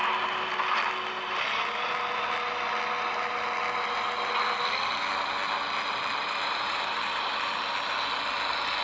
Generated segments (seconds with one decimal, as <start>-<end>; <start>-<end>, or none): 6.2-7.5